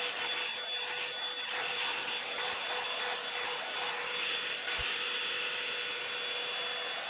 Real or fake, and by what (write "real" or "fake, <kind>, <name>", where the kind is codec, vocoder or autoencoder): real